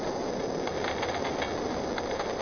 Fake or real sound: real